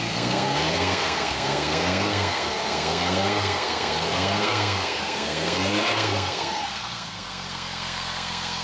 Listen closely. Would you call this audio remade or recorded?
remade